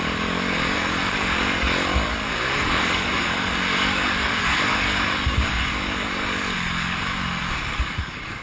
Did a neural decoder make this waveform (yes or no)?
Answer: yes